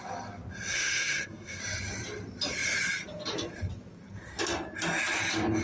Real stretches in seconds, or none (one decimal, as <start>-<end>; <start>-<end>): 0.0-0.7; 1.6-5.6